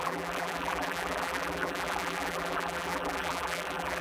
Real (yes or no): no